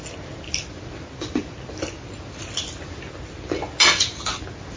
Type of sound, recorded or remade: recorded